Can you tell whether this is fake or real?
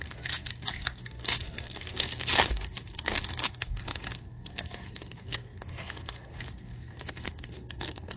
fake